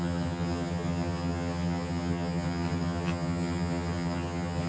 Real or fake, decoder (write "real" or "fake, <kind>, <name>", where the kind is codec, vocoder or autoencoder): fake, vocoder, HiFi-GAN